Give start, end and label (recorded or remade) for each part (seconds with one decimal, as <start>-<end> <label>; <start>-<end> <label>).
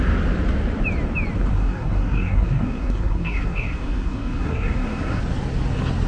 0.0-1.5 recorded; 1.5-5.2 remade; 5.2-6.1 recorded